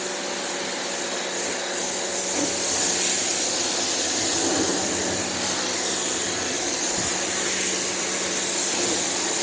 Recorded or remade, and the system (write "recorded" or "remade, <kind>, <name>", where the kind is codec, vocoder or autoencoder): recorded